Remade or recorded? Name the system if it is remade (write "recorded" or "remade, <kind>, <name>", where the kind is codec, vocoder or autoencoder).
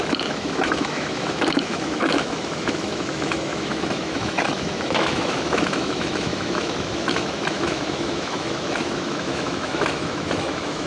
remade, autoencoder, DAC-VAE